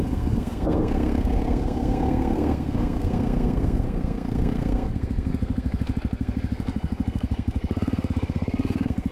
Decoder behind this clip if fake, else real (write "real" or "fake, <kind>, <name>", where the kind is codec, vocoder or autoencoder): fake, codec, SNAC